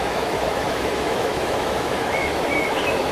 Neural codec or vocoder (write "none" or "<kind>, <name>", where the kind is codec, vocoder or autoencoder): autoencoder, DAC-VAE